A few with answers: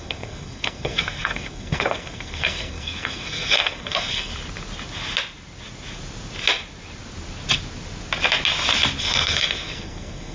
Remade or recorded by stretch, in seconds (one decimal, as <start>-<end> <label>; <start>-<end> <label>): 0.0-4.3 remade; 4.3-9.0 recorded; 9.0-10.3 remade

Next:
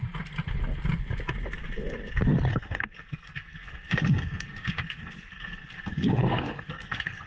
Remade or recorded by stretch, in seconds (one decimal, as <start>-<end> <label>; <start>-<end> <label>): 0.0-2.5 recorded; 2.5-7.3 remade

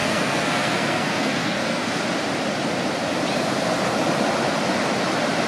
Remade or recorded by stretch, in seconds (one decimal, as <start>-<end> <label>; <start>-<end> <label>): 0.0-2.0 remade; 2.0-5.5 recorded

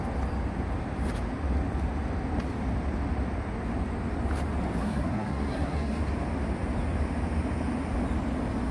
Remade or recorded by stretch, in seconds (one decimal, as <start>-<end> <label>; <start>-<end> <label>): 0.0-4.8 recorded; 4.8-6.0 remade; 6.0-8.7 recorded

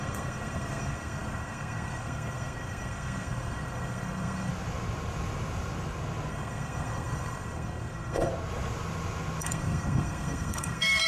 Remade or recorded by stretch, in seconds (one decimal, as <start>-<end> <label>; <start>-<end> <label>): 0.0-4.5 remade; 4.5-6.3 recorded; 6.3-8.3 remade; 8.3-9.4 recorded; 9.4-11.1 remade

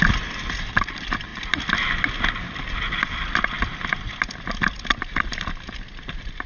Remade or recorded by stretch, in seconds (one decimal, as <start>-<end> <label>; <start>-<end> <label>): 0.0-6.5 recorded